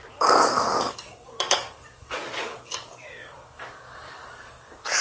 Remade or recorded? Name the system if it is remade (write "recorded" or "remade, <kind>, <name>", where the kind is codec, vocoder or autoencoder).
remade, codec, DAC